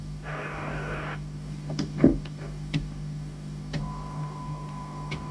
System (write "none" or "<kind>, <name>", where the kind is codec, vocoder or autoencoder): codec, DAC